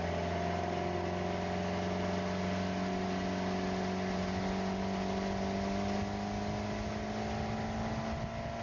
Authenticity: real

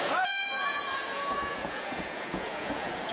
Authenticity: fake